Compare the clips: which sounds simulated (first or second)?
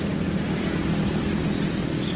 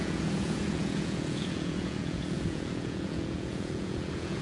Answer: second